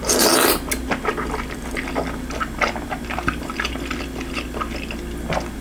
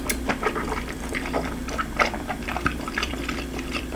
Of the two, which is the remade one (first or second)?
second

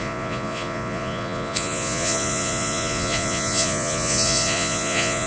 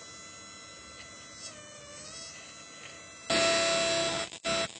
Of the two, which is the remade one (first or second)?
first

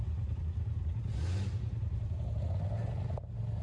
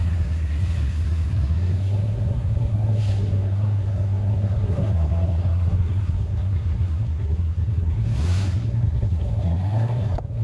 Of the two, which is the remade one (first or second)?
second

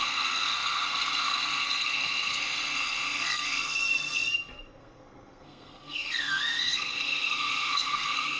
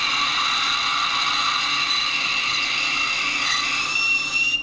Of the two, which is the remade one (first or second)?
first